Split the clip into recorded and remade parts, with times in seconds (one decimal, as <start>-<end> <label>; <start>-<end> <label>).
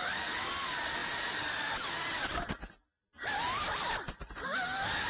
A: 0.0-5.1 recorded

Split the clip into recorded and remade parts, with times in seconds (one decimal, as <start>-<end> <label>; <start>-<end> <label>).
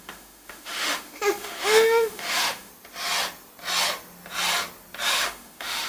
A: 0.0-2.7 remade; 2.7-5.1 recorded; 5.1-5.9 remade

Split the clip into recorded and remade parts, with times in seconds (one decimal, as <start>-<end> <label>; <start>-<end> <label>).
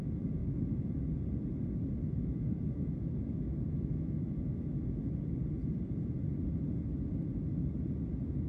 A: 0.0-0.4 recorded; 0.4-1.0 remade; 1.0-2.0 recorded; 2.0-5.1 remade; 5.1-8.5 recorded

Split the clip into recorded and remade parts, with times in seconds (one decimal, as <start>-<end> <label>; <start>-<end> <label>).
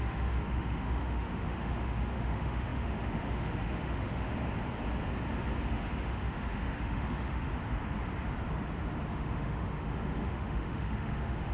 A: 0.0-4.3 remade; 4.3-5.7 recorded; 5.7-7.5 remade; 7.5-9.1 recorded; 9.1-11.5 remade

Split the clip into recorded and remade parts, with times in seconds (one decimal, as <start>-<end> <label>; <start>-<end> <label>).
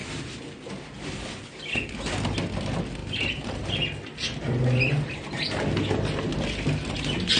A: 0.0-7.4 recorded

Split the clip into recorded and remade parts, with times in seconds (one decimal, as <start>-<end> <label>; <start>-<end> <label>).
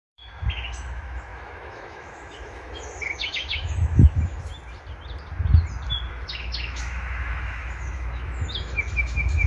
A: 0.0-4.5 remade; 4.5-6.1 recorded; 6.1-9.5 remade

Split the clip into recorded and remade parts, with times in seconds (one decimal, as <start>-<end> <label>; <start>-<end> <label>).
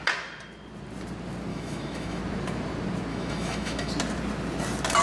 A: 0.0-1.5 recorded; 1.5-2.2 remade; 2.2-3.1 recorded; 3.1-3.9 remade; 3.9-5.0 recorded